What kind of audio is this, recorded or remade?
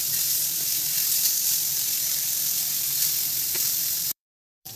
remade